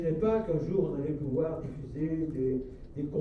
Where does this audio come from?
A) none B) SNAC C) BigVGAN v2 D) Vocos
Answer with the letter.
C